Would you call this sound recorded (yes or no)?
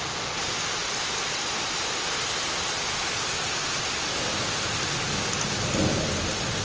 yes